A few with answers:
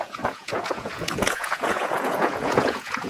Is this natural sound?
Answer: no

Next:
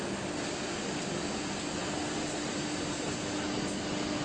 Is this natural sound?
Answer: yes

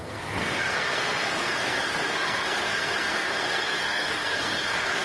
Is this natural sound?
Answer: no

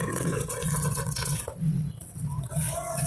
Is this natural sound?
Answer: no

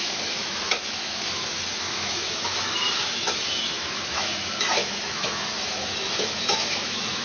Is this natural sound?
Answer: no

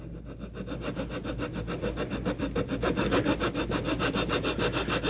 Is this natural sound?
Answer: yes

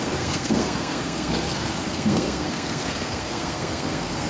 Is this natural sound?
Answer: no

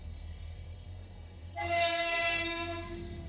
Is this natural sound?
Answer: no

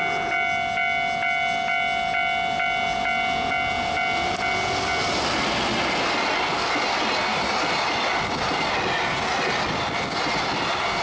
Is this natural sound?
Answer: yes